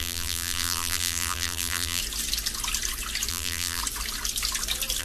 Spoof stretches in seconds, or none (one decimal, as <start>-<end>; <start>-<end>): 0.0-2.0; 3.3-3.8